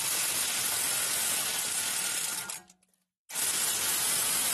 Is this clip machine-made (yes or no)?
no